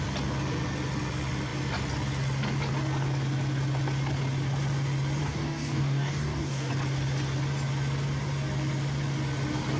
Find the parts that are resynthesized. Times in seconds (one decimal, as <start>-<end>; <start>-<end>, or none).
5.2-6.7